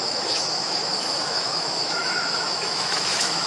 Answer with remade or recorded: remade